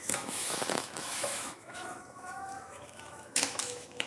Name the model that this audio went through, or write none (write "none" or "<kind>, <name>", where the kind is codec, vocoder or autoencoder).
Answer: autoencoder, DAC-VAE